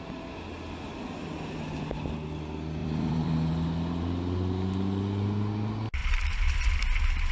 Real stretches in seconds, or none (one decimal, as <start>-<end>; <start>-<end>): 0.0-2.8; 3.5-6.0; 6.7-7.3